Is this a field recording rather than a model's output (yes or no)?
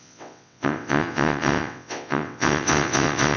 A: no